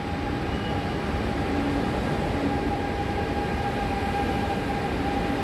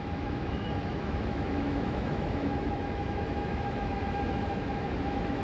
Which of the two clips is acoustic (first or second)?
first